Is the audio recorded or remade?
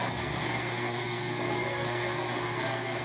remade